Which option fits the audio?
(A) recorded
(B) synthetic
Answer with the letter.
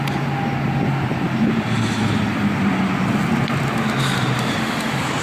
A